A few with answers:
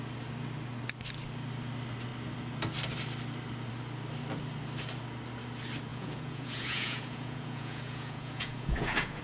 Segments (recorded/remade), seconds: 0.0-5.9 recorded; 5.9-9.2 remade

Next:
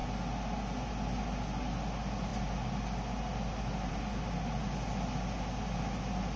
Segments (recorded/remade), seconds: 0.0-6.4 recorded